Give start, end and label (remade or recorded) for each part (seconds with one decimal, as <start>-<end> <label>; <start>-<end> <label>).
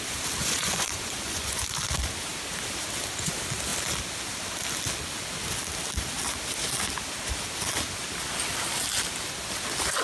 0.0-0.4 recorded; 0.4-1.6 remade; 1.6-10.0 recorded